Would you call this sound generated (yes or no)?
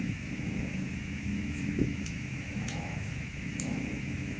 yes